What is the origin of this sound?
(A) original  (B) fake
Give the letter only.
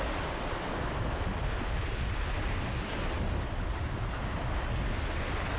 A